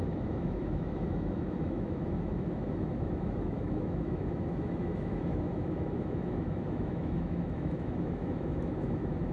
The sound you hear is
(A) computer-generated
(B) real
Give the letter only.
A